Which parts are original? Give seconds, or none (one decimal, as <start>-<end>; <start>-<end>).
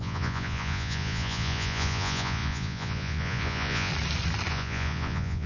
3.9-4.5